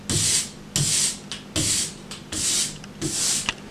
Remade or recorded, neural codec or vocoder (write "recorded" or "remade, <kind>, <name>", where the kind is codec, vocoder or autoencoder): recorded